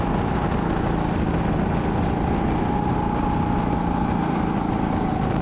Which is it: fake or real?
real